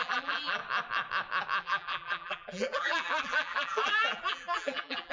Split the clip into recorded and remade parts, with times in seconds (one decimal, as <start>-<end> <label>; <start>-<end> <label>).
0.0-0.6 remade; 0.6-1.6 recorded; 1.6-5.1 remade